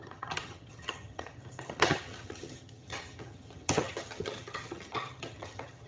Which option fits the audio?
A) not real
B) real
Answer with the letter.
A